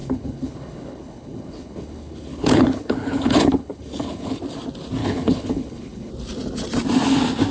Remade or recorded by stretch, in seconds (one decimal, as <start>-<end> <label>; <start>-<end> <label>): 0.0-4.4 remade; 4.4-5.0 recorded; 5.0-6.1 remade; 6.1-7.5 recorded